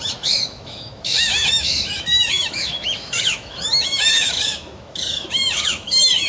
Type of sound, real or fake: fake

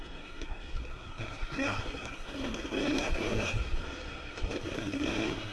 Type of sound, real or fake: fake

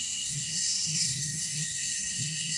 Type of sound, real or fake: fake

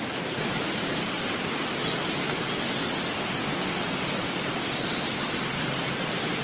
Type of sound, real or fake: real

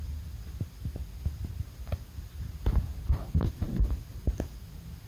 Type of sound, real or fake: real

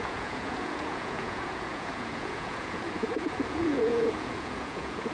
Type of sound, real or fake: fake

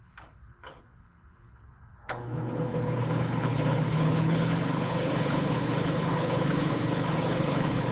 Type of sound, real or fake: fake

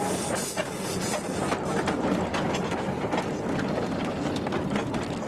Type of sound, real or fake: real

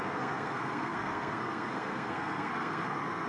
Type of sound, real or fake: fake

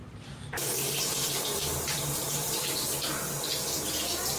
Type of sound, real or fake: fake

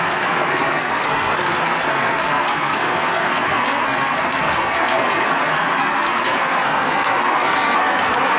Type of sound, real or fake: fake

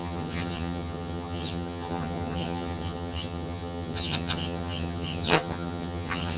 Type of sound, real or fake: fake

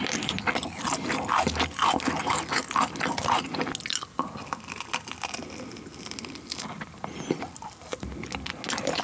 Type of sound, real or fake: real